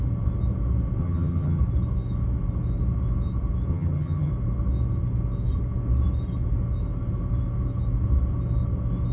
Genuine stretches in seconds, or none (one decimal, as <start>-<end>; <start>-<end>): 0.0-1.0; 1.6-3.7; 4.3-9.1